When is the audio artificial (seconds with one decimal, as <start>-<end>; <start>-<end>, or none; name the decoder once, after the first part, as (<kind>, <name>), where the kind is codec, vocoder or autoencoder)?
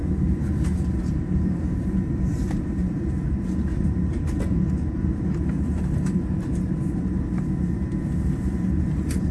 0.0-9.3 (vocoder, BigVGAN v2)